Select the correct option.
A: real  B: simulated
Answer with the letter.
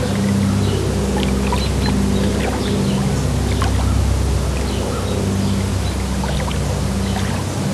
A